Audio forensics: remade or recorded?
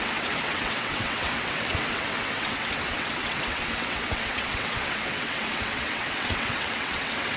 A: remade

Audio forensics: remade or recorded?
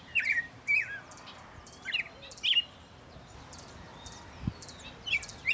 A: recorded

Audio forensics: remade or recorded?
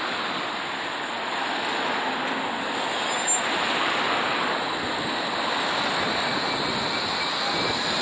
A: recorded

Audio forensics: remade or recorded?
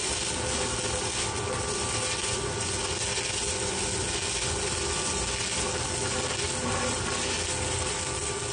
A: recorded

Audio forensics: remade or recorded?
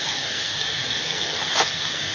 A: remade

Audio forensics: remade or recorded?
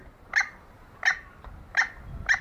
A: recorded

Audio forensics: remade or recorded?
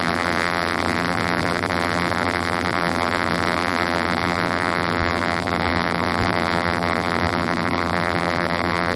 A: remade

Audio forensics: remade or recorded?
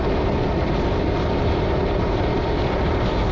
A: remade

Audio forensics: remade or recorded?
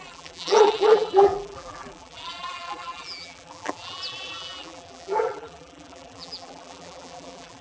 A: remade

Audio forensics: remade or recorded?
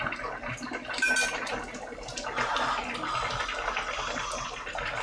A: recorded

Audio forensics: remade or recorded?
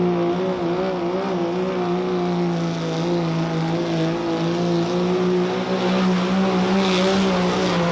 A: recorded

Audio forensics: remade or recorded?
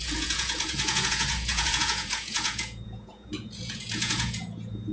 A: remade